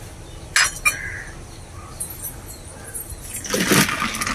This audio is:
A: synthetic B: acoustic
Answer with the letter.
B